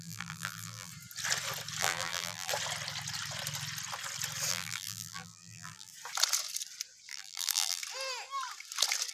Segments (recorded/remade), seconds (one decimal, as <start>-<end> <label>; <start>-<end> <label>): 0.0-0.9 remade; 0.9-1.8 recorded; 1.8-2.5 remade; 2.5-4.5 recorded; 4.5-5.9 remade; 5.9-7.1 recorded; 7.1-7.8 remade; 7.8-9.1 recorded